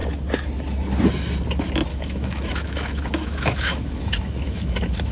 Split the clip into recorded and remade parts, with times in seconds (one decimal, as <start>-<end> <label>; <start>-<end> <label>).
0.0-1.9 recorded; 1.9-5.1 remade